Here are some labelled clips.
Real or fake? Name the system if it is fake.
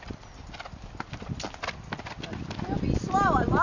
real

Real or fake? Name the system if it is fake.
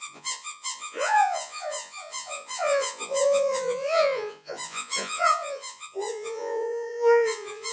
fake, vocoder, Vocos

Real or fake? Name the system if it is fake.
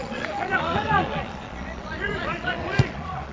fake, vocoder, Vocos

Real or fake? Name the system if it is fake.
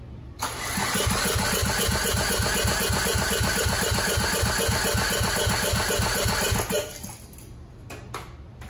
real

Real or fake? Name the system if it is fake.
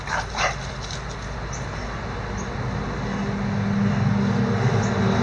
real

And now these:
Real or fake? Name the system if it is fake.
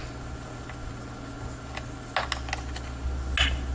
real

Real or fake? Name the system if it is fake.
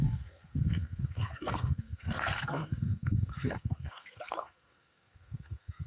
fake, codec, SNAC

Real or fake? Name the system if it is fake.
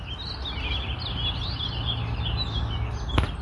real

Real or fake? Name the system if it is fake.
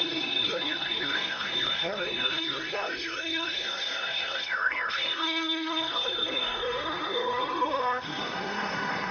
fake, codec, SNAC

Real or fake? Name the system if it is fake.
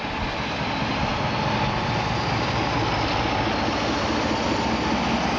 real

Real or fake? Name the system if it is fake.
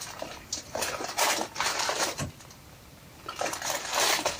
fake, vocoder, BigVGAN v2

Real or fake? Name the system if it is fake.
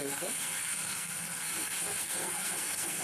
fake, codec, SNAC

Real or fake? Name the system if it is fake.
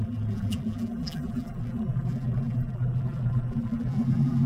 fake, vocoder, BigVGAN v2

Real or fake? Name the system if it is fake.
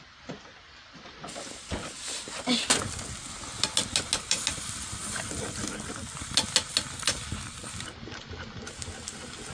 real